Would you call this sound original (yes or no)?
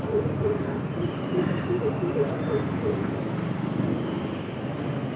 yes